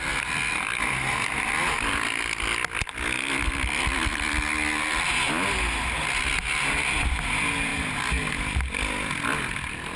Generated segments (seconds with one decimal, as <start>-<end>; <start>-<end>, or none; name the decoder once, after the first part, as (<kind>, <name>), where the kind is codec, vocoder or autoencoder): 7.7-8.3 (vocoder, BigVGAN v2)